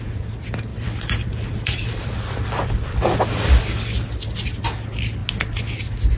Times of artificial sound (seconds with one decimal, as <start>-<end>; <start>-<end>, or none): 0.7-3.2

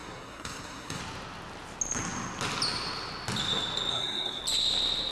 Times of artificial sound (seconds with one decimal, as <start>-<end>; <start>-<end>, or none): 0.0-1.0; 3.9-4.4

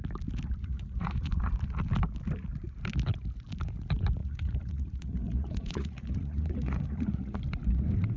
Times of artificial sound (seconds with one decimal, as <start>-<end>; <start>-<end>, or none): 0.6-1.5; 4.2-7.4

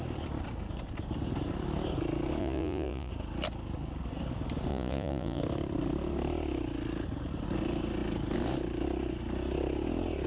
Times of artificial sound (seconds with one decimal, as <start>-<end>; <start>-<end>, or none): 2.4-3.1; 4.7-5.4

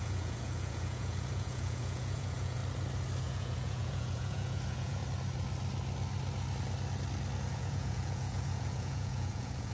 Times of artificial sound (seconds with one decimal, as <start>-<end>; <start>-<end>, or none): 0.0-2.6; 3.2-5.0; 7.5-9.7

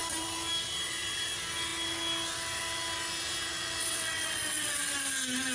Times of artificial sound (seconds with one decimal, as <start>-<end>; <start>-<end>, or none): 3.8-4.8

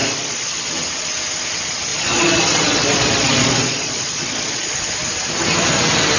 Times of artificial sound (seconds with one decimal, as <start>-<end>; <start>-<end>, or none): 0.0-0.7; 1.9-4.8

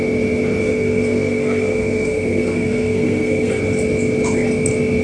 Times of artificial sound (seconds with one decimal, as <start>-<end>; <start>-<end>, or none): 0.6-3.6